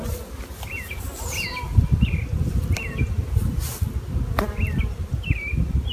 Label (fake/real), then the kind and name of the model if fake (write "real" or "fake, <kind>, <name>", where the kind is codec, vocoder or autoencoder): real